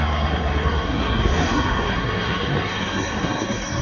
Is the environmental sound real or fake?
fake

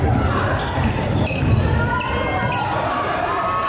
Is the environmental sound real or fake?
real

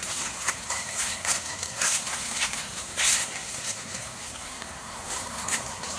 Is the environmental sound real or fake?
fake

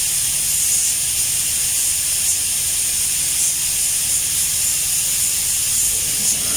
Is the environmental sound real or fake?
real